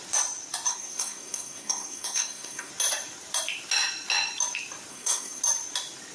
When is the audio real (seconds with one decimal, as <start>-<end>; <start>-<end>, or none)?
0.0-0.7; 2.7-4.9; 5.4-6.1